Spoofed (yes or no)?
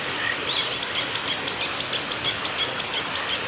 no